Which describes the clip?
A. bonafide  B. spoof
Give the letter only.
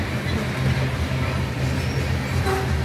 A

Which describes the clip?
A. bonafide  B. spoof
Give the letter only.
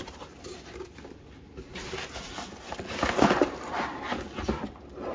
A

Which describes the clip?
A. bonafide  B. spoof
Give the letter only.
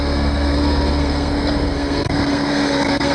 B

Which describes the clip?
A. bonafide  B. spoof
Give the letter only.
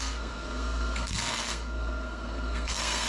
B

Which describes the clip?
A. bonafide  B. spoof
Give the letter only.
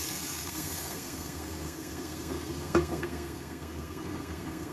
B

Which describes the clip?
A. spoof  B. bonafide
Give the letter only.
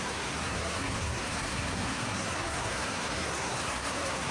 A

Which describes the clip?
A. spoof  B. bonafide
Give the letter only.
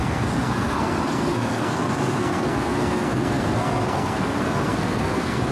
A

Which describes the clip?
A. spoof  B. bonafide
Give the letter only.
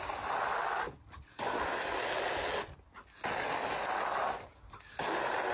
B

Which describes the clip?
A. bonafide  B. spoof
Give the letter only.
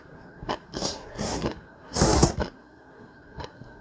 B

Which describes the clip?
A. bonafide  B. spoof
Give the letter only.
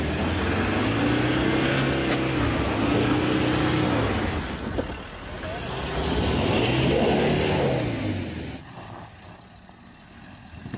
A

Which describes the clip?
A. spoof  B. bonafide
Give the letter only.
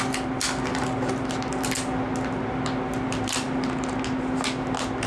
B